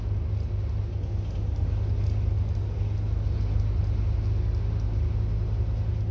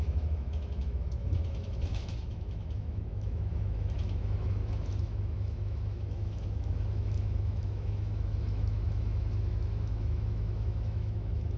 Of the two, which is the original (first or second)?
first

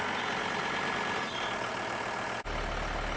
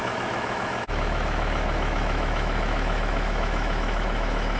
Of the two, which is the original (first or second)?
first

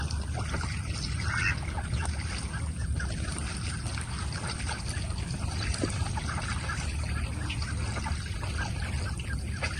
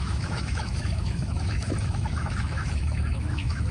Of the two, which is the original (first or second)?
first